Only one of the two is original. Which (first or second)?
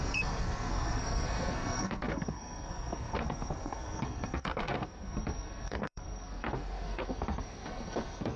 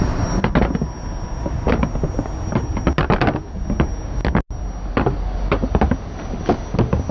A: second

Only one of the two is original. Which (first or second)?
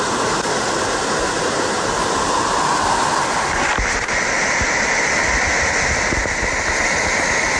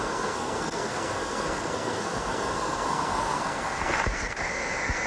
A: first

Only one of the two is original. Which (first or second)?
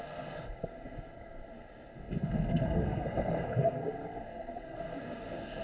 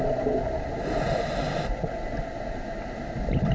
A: second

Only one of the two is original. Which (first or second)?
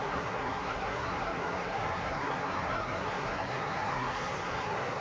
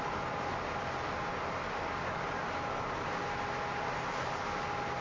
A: second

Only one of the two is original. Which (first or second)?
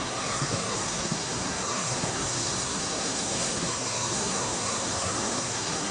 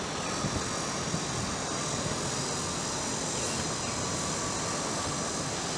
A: second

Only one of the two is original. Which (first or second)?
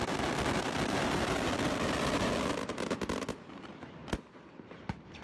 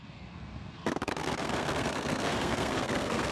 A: first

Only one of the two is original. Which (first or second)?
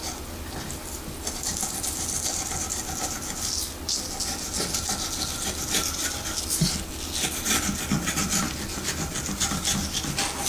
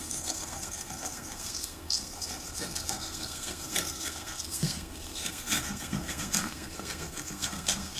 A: first